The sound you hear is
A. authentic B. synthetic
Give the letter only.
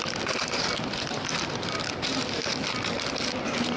A